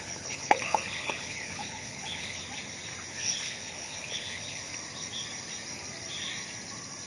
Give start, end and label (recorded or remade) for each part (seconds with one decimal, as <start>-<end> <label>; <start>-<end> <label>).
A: 0.0-2.4 remade; 2.4-3.1 recorded; 3.1-4.7 remade; 4.7-7.1 recorded

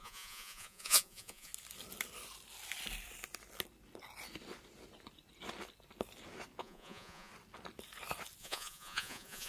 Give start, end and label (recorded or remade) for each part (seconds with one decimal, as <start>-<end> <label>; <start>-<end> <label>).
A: 0.0-1.5 remade; 1.5-6.6 recorded; 6.6-7.3 remade; 7.3-8.4 recorded; 8.4-9.5 remade